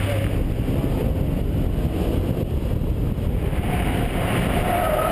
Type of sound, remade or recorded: recorded